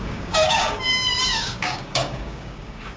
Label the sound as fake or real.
fake